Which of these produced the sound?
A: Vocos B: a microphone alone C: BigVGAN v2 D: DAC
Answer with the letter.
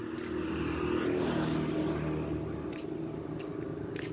B